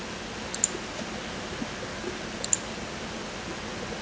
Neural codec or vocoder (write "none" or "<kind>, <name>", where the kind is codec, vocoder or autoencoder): none